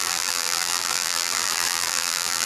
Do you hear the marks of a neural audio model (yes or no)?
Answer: yes